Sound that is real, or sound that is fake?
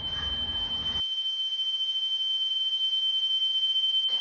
fake